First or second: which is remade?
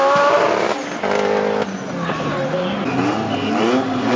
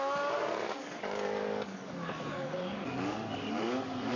second